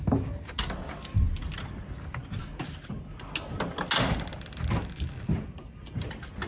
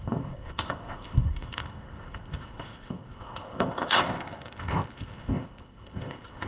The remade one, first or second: second